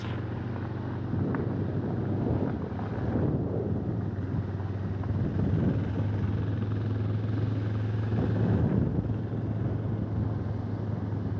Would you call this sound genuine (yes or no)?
yes